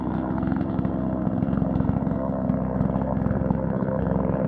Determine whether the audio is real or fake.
fake